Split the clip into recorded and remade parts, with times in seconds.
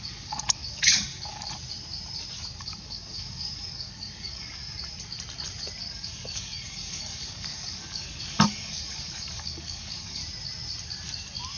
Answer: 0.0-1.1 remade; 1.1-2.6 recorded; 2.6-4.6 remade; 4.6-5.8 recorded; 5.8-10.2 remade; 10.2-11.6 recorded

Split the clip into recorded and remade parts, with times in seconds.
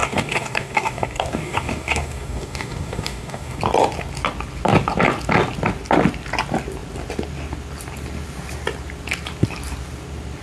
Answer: 0.0-3.6 remade; 3.6-10.4 recorded